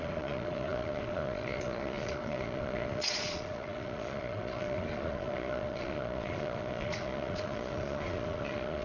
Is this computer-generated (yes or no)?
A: yes